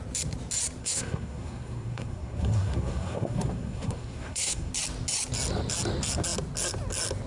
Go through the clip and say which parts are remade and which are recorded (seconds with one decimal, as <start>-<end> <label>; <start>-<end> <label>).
0.0-0.8 recorded; 0.8-4.7 remade; 4.7-7.3 recorded